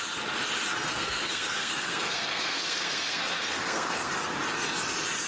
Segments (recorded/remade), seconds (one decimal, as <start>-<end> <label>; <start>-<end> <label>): 0.0-0.9 recorded; 0.9-4.1 remade; 4.1-5.3 recorded